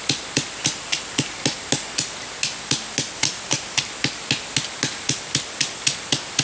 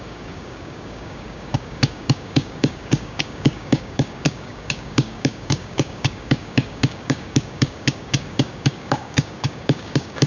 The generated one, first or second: second